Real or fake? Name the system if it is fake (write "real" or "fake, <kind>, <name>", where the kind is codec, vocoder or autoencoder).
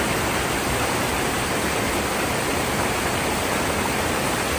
real